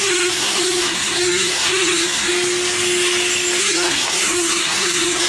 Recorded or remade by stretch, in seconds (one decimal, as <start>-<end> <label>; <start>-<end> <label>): 0.0-2.3 remade; 2.3-3.6 recorded; 3.6-5.3 remade